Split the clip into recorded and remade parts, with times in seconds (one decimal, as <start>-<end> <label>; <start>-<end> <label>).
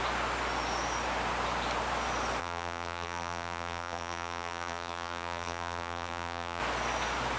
0.0-2.4 recorded; 2.4-6.6 remade; 6.6-7.4 recorded